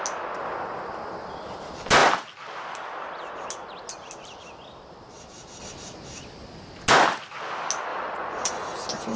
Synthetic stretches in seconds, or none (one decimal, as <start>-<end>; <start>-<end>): 7.9-8.5